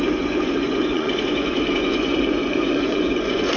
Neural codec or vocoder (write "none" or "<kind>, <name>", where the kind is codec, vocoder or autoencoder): vocoder, Vocos